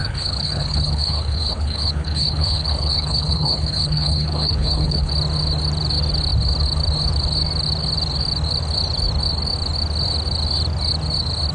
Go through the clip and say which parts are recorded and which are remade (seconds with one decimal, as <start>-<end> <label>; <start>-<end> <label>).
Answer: 0.0-5.1 remade; 5.1-11.5 recorded

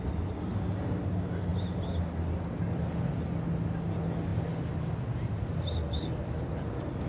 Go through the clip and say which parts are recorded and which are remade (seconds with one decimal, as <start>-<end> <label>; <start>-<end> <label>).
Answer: 0.0-7.1 recorded

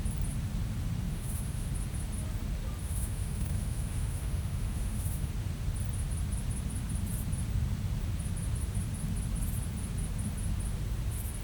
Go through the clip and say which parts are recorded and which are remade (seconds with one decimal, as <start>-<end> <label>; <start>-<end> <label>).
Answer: 0.0-1.1 recorded; 1.1-1.7 remade; 1.7-2.8 recorded; 2.8-5.3 remade; 5.3-11.4 recorded

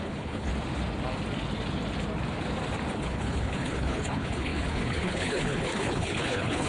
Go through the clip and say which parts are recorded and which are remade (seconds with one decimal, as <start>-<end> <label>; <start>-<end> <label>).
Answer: 0.0-0.5 remade; 0.5-2.9 recorded; 2.9-6.7 remade

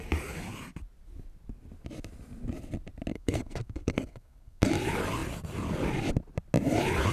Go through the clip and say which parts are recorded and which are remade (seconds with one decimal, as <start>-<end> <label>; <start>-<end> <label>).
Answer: 0.0-3.1 recorded; 3.1-4.7 remade; 4.7-7.1 recorded

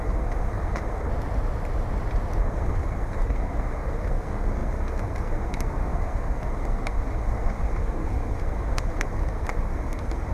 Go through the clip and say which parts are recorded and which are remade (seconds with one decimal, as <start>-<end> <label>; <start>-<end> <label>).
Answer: 0.0-1.1 remade; 1.1-2.4 recorded; 2.4-10.3 remade

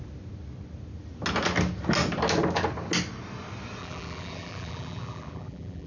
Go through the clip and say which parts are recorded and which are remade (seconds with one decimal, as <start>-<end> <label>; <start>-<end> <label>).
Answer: 0.0-3.8 recorded; 3.8-5.9 remade